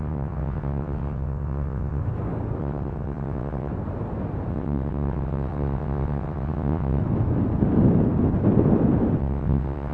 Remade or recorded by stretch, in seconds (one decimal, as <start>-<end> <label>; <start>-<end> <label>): 0.0-2.0 remade; 2.0-2.6 recorded; 2.6-3.7 remade; 3.7-4.5 recorded; 4.5-7.0 remade; 7.0-9.2 recorded; 9.2-9.9 remade